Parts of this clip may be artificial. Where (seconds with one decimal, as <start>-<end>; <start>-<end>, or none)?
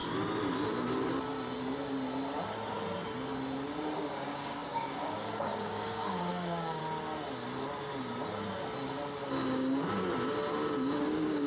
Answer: 4.0-6.8; 11.0-11.5